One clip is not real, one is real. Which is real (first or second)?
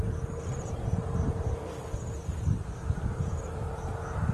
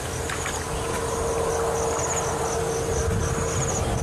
second